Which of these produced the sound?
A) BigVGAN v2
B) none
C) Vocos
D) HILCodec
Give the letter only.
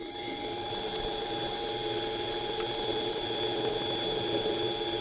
B